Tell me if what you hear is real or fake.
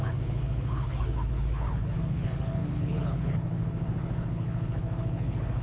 fake